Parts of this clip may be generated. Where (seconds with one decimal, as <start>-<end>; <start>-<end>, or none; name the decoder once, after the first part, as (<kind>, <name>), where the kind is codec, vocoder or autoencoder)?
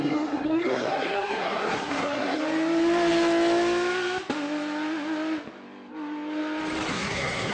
0.0-2.4 (codec, SNAC); 6.9-7.5